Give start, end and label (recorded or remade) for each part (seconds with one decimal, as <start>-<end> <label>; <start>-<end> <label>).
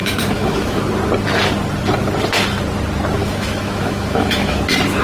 0.0-0.8 remade; 0.8-3.2 recorded; 3.2-4.6 remade; 4.6-5.0 recorded